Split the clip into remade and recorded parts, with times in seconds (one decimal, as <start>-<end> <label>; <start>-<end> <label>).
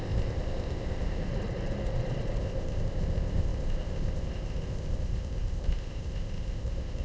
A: 0.0-1.3 remade; 1.3-2.4 recorded; 2.4-7.0 remade